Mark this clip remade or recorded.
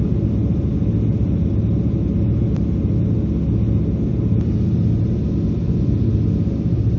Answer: recorded